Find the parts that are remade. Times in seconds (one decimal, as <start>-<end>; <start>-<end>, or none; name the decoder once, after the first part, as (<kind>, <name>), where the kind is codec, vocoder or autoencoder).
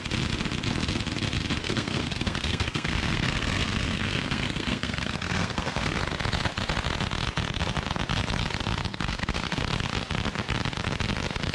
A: 1.6-6.0 (codec, SNAC); 8.9-9.6